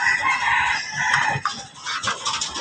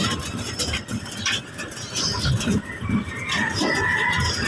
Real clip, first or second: first